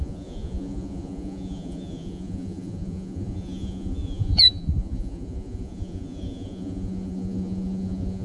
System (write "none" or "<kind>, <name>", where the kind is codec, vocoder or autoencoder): vocoder, Vocos